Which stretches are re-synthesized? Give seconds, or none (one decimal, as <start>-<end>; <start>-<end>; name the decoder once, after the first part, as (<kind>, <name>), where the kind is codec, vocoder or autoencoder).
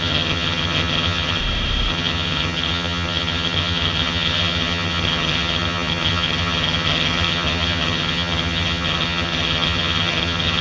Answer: 0.0-1.4 (vocoder, HiFi-GAN); 1.9-10.6